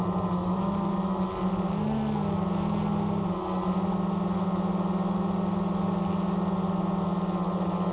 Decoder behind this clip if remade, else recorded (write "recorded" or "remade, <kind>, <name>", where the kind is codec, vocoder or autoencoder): recorded